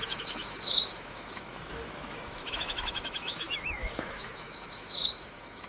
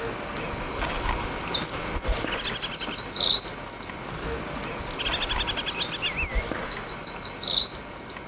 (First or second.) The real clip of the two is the second